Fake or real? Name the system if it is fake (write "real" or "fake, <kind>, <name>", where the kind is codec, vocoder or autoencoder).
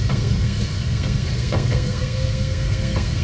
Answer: fake, codec, SNAC